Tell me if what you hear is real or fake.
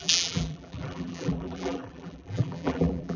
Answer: fake